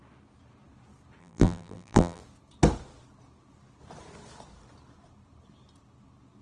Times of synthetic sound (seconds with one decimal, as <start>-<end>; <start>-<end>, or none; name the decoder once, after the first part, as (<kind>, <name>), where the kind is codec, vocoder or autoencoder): 1.2-2.2 (vocoder, BigVGAN v2)